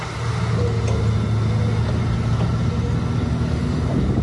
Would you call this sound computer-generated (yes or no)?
no